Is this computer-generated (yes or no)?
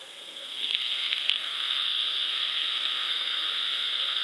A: yes